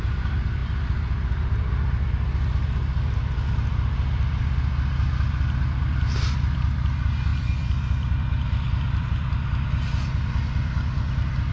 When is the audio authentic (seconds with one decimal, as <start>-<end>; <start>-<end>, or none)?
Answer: 0.0-11.5